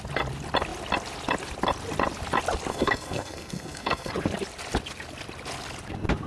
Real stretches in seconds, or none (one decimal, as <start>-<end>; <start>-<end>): 0.0-2.7; 4.1-6.3